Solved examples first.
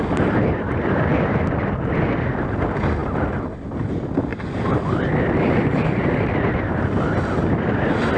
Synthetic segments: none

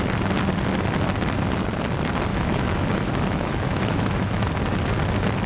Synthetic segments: 2.3-4.5 (autoencoder, DAC-VAE)

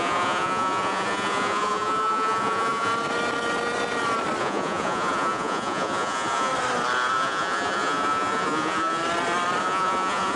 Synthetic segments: 0.0-2.9 (vocoder, Vocos); 4.4-6.5; 7.1-9.0; 9.6-10.4